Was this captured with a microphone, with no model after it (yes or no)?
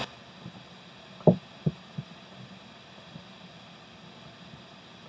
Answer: yes